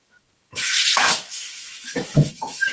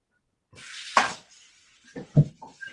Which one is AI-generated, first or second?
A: first